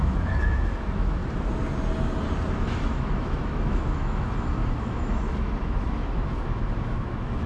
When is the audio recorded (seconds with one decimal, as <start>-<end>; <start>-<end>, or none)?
1.2-2.5